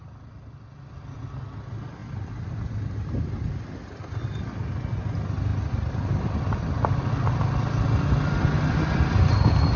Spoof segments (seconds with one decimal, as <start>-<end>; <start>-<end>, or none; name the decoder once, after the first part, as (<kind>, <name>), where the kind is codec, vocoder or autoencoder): none